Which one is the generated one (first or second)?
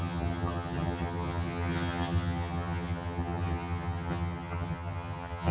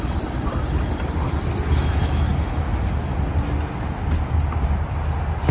first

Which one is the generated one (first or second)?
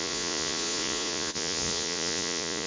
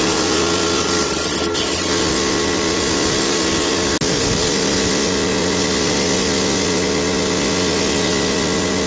first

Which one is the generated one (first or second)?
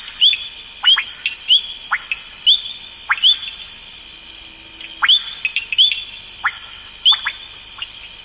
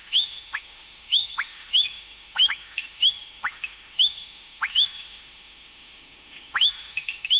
second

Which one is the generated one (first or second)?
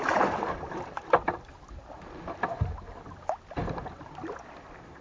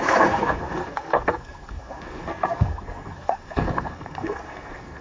second